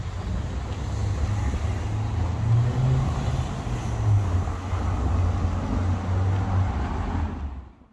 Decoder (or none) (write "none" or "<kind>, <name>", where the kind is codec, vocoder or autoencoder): none